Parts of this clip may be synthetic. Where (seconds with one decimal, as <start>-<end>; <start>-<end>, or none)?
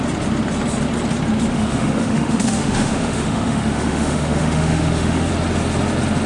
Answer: 1.5-5.3